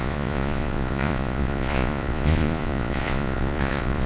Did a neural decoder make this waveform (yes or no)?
yes